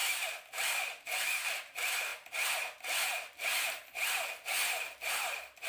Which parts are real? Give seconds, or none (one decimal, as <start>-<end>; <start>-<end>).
0.0-1.0; 2.1-5.0

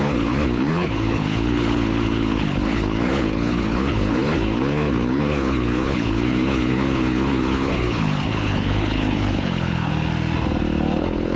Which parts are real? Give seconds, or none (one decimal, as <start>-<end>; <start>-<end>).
9.9-11.0